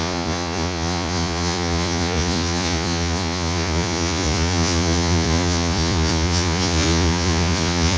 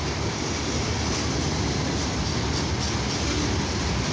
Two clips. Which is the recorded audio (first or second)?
second